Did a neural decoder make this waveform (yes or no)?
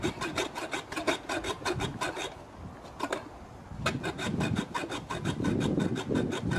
no